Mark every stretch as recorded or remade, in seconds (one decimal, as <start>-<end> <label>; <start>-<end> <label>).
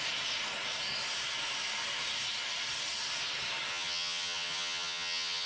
0.0-3.7 recorded; 3.7-5.5 remade